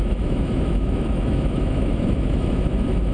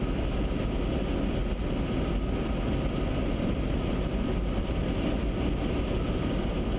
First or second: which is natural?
second